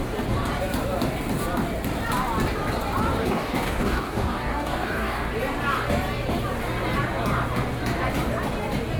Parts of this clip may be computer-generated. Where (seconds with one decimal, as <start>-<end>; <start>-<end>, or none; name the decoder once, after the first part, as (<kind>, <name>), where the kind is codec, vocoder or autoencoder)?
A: 3.2-5.3 (codec, DAC)

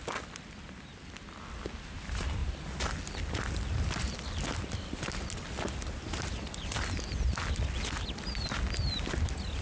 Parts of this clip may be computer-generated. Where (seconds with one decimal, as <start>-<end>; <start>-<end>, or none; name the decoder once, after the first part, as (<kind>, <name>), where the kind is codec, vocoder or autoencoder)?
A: none

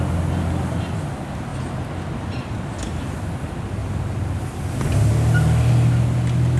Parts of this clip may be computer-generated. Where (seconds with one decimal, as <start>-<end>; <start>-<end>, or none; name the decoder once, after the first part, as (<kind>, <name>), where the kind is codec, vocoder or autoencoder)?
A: none

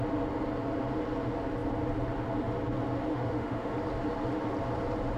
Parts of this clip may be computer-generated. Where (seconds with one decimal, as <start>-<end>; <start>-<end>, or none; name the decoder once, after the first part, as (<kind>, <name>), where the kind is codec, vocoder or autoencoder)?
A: 3.1-3.7 (autoencoder, DAC-VAE)

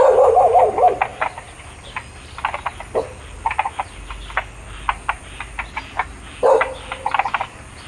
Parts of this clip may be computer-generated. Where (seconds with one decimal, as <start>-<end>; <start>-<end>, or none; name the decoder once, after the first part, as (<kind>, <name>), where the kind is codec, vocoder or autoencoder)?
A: none

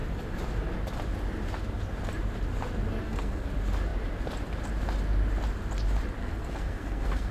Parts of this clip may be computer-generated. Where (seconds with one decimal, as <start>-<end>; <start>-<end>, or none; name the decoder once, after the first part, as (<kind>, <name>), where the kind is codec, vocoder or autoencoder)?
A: 3.0-3.5 (codec, SNAC); 6.2-7.3

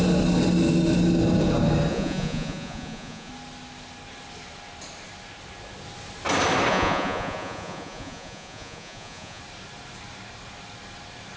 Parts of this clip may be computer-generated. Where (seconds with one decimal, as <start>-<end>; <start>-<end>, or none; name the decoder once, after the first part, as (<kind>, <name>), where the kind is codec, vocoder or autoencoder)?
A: 1.9-3.3 (vocoder, Vocos); 6.7-9.4

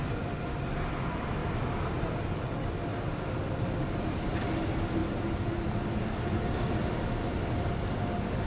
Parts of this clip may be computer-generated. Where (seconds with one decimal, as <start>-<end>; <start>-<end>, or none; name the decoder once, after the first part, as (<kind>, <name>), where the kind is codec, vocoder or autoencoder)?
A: none